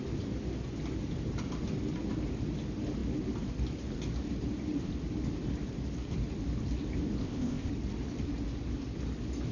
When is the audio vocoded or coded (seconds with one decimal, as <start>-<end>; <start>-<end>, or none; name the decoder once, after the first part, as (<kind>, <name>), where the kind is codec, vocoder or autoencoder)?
7.2-7.7 (codec, ZipCodec)